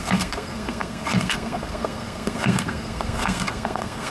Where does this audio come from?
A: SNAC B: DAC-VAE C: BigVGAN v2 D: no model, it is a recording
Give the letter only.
A